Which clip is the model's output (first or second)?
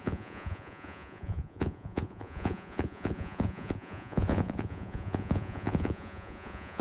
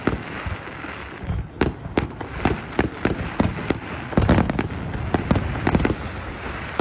first